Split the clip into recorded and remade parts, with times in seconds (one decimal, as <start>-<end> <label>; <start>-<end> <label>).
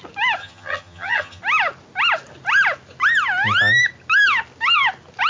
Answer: 0.0-0.4 recorded; 0.4-1.4 remade; 1.4-5.3 recorded